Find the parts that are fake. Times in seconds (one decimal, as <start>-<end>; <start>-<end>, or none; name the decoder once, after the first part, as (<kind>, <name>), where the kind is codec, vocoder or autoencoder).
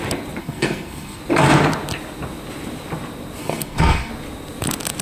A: 0.4-1.2 (codec, SNAC); 3.4-4.1